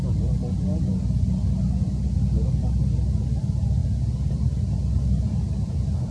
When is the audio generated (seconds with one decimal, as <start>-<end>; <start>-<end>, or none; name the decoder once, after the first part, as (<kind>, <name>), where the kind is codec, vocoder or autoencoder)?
none